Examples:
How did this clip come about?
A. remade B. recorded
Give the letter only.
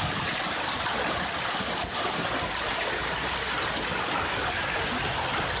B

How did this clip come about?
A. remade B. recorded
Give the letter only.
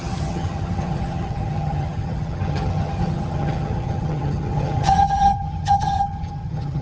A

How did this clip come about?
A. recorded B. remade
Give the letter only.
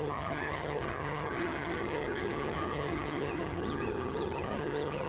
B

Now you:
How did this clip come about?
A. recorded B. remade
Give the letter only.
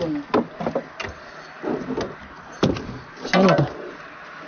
A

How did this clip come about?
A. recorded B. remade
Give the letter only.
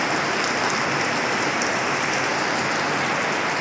A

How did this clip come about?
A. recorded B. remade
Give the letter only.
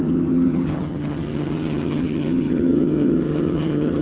B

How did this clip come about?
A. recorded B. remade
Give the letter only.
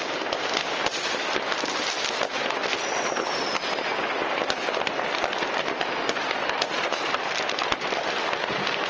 A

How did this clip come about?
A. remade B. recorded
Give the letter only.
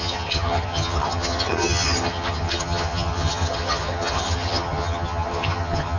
A